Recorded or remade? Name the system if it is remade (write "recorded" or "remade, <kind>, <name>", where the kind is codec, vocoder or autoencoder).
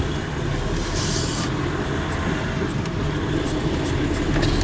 recorded